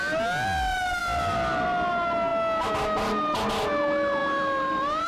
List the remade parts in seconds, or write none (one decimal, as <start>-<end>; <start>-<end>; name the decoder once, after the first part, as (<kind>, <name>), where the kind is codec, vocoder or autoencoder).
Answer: 4.2-5.1 (vocoder, BigVGAN v2)